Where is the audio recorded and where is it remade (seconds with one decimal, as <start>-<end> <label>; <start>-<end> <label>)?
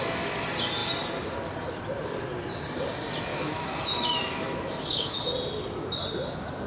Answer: 0.0-3.3 recorded; 3.3-5.2 remade; 5.2-6.7 recorded